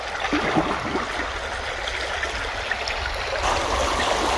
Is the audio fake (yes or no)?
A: no